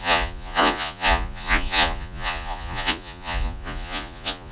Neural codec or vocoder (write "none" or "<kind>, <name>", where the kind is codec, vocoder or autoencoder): vocoder, Vocos